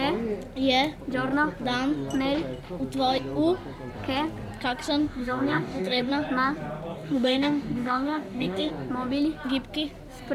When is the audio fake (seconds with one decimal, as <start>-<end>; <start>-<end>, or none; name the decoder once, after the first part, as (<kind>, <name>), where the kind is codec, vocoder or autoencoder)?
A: 5.0-6.1 (codec, DAC); 6.9-8.7